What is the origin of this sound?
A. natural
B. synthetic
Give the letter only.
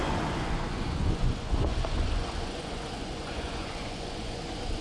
B